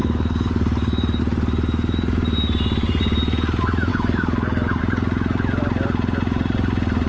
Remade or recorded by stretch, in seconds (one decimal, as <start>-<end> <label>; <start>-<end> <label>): 0.0-1.2 remade; 1.2-3.9 recorded; 3.9-4.8 remade; 4.8-7.1 recorded